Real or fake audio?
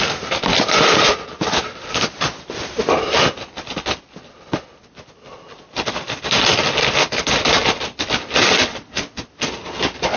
real